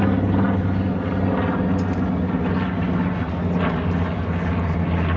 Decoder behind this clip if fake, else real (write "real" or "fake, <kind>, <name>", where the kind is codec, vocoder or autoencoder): real